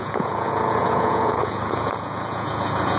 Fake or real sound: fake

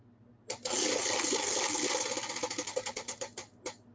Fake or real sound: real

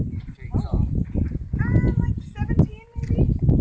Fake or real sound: real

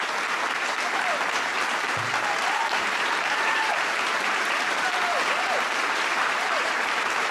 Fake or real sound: fake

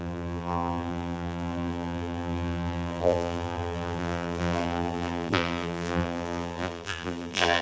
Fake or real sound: fake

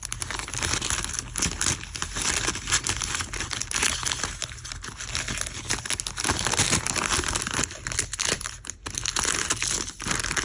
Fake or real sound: real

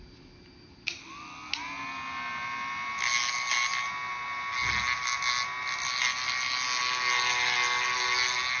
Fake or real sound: real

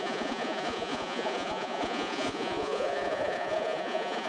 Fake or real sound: fake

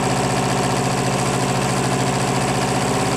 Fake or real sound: real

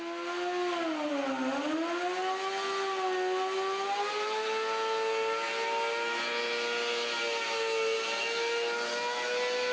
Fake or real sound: real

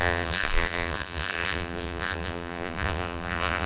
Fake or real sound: fake